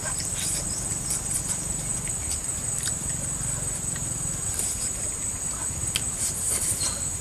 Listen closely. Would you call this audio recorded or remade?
remade